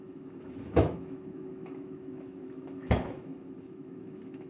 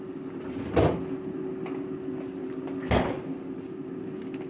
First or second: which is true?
second